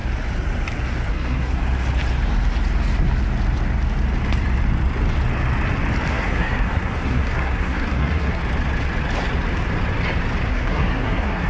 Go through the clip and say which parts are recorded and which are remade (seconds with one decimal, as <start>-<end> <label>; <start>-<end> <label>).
0.0-1.1 recorded; 1.1-1.6 remade; 1.6-6.1 recorded; 6.1-8.4 remade; 8.4-10.5 recorded; 10.5-11.5 remade